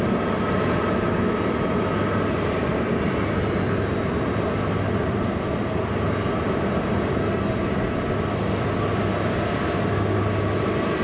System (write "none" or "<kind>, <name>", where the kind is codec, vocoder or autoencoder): none